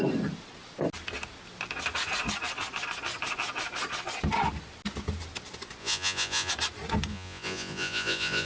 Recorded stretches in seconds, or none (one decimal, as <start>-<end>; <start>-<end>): 0.0-5.8; 6.5-7.1